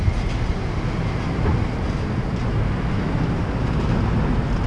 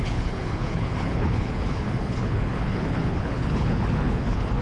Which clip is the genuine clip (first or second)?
first